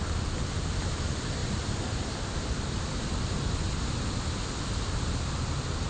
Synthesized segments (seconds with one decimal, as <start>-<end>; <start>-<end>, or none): none